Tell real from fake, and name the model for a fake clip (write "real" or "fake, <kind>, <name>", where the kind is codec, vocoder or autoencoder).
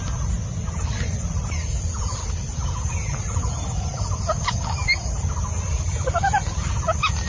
real